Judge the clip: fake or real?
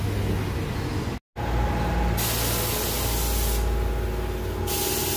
real